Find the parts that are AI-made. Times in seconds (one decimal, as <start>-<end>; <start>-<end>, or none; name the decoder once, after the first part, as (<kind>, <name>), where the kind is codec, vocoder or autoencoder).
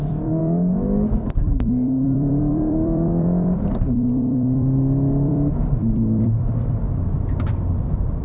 0.0-8.2 (vocoder, BigVGAN v2)